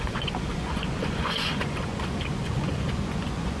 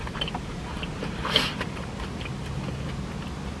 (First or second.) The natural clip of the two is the second